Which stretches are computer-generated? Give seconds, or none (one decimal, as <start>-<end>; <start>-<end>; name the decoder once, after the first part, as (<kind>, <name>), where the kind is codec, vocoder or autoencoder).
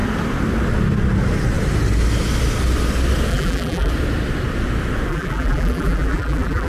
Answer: 3.3-3.9 (vocoder, BigVGAN v2); 5.1-6.7